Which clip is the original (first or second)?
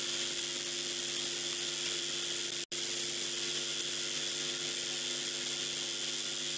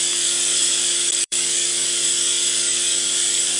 first